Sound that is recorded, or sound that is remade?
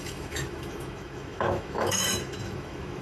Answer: remade